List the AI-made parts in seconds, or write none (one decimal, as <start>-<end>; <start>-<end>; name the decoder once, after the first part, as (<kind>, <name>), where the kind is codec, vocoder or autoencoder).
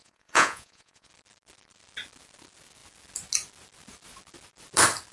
0.0-1.1 (vocoder, Vocos)